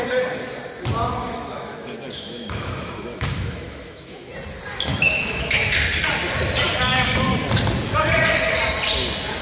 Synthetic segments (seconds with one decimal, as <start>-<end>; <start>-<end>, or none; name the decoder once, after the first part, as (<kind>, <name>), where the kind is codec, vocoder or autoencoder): 1.2-4.3 (autoencoder, DAC-VAE); 4.9-5.7

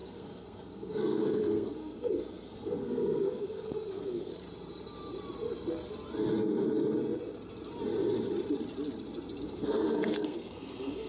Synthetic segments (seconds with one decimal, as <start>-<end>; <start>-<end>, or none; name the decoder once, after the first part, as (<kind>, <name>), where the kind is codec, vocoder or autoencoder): 0.0-4.3 (codec, SNAC); 9.4-11.1